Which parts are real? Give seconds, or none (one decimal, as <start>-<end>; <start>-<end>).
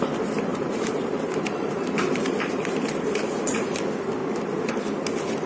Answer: 0.0-0.5; 3.8-4.2; 4.7-5.5